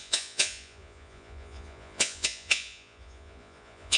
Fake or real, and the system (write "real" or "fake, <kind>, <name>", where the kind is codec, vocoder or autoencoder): fake, vocoder, Vocos